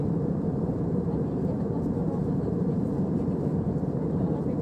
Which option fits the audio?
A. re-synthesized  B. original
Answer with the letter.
A